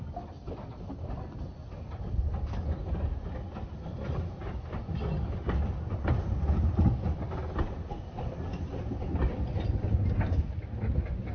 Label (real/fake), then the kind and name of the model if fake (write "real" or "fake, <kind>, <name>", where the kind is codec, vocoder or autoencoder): real